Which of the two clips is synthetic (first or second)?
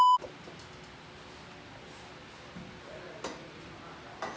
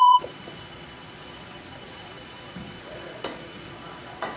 second